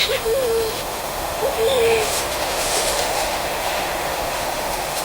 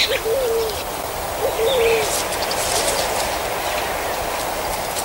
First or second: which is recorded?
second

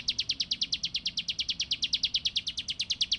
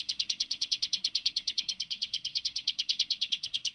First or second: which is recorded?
first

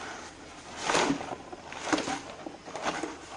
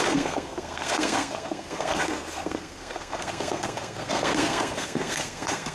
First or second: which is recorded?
first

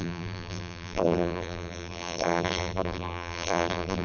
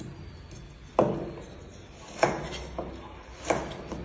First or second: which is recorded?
second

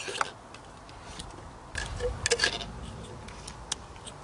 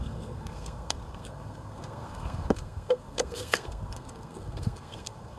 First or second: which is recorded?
first